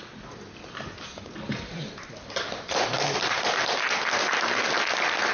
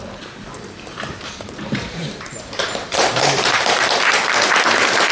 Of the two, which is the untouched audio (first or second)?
first